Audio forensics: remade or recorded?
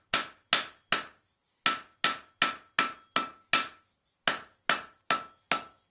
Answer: recorded